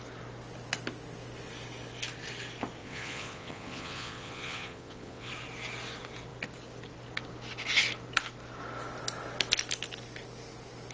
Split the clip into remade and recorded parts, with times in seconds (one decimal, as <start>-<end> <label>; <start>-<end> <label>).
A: 0.0-2.8 recorded; 2.8-5.3 remade; 5.3-10.9 recorded